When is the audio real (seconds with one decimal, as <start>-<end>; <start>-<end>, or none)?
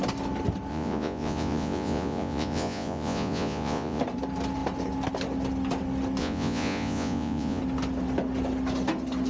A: 0.0-0.7; 4.0-6.2; 7.6-9.3